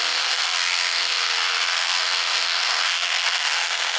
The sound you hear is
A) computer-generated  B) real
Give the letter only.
A